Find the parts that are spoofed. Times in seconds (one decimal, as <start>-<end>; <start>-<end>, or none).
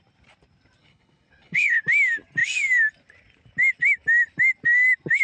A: 0.8-1.8